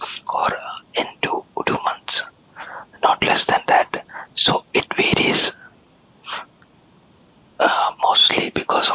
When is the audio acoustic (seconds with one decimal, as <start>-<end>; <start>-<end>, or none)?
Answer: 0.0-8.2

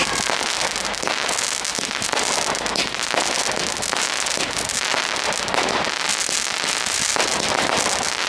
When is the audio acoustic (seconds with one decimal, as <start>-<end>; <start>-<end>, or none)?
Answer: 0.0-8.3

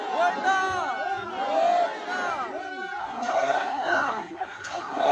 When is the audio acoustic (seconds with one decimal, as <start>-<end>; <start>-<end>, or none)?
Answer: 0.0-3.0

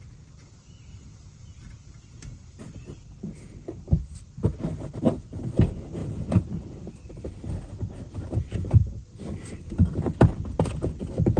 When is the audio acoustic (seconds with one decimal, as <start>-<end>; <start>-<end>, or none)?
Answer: 0.0-6.0; 6.9-11.4

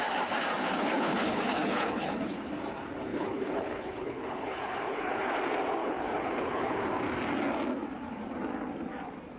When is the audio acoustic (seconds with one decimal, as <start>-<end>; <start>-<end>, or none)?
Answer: 0.0-0.6; 2.5-3.1; 5.3-5.8; 6.8-9.4